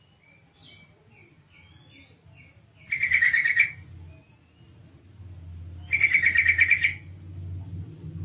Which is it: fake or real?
real